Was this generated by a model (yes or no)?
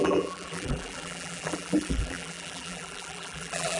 yes